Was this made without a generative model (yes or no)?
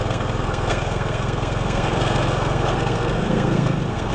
no